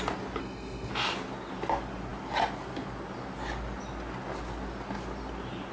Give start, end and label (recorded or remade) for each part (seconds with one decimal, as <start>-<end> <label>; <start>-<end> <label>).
0.0-0.4 recorded; 0.4-0.9 remade; 0.9-5.7 recorded